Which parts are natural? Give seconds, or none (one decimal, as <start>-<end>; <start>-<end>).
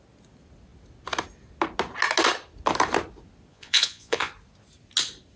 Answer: 0.0-3.5; 4.3-5.4